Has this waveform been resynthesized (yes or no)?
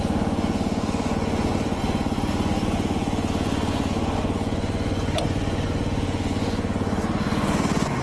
yes